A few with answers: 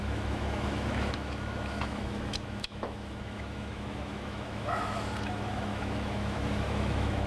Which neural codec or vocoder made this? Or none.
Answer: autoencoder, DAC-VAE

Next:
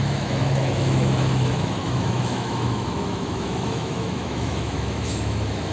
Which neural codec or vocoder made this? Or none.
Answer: autoencoder, DAC-VAE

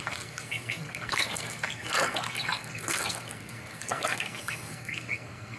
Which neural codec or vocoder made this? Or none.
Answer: codec, SNAC